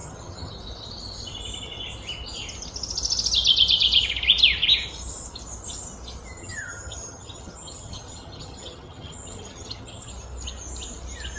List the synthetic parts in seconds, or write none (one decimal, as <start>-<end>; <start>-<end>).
0.0-0.5; 6.4-10.1